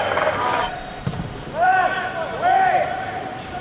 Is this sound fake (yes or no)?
yes